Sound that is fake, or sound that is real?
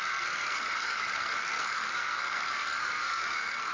fake